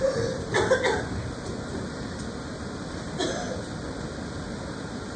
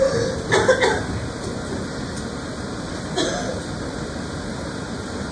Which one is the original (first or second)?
second